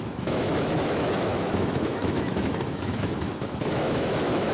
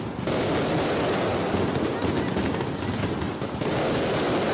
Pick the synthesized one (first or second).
first